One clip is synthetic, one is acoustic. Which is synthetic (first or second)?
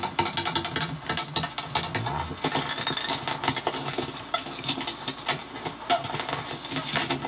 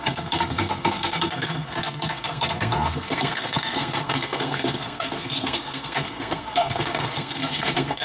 second